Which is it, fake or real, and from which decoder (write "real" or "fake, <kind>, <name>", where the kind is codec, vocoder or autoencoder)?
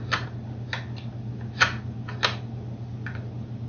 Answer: real